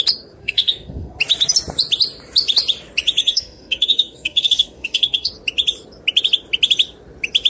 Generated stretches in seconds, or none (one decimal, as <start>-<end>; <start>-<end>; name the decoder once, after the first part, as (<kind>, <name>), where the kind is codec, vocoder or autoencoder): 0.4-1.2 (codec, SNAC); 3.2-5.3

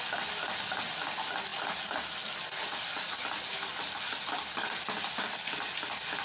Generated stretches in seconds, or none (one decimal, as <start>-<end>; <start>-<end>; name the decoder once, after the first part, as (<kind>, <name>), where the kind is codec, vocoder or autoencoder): none

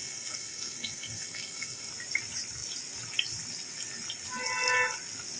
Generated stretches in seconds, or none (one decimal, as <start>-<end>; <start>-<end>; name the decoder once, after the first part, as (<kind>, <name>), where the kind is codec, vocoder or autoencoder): 0.0-1.9 (codec, SNAC)